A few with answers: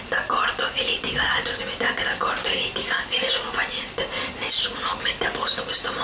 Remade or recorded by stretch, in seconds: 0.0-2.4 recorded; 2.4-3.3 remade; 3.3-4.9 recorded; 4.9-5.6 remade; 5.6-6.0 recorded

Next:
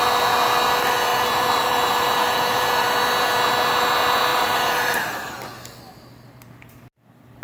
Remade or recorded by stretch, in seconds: 0.0-1.1 recorded; 1.1-3.0 remade; 3.0-4.3 recorded; 4.3-5.3 remade; 5.3-7.4 recorded

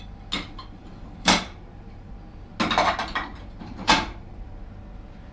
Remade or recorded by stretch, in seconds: 0.0-0.8 recorded; 0.8-2.1 remade; 2.1-3.3 recorded; 3.3-4.5 remade; 4.5-5.3 recorded

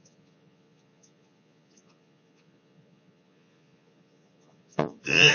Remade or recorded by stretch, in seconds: 0.0-5.3 remade

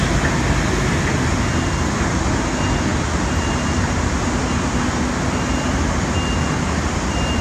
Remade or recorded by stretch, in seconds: 0.0-7.4 recorded

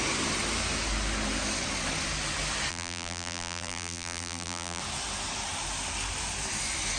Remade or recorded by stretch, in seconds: 0.0-2.7 recorded; 2.7-4.8 remade; 4.8-7.0 recorded

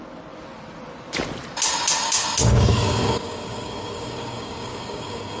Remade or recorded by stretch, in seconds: 0.0-2.4 recorded; 2.4-5.4 remade

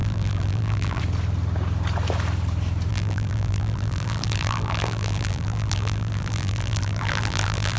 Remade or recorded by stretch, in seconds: 0.0-1.0 remade; 1.0-2.9 recorded; 2.9-7.8 remade